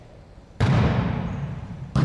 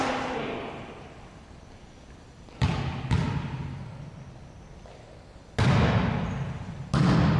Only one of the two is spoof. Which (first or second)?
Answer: first